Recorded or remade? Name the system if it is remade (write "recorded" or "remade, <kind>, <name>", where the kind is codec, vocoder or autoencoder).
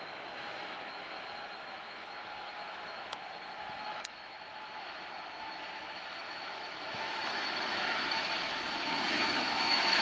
remade, autoencoder, DAC-VAE